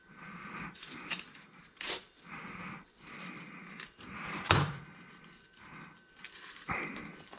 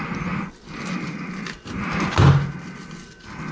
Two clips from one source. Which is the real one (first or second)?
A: second